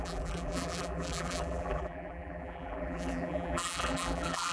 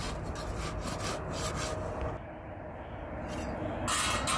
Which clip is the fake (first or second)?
first